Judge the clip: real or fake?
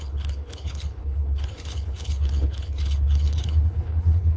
fake